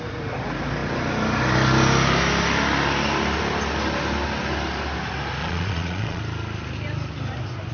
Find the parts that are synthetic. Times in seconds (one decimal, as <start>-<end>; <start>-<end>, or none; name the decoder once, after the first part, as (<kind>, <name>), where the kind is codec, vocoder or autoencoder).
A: 5.4-6.2 (vocoder, Vocos)